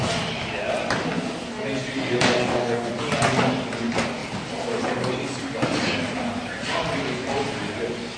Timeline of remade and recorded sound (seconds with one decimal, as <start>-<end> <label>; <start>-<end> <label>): 0.0-2.4 recorded; 2.4-2.9 remade; 2.9-8.2 recorded